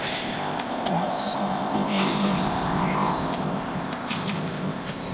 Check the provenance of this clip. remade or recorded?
remade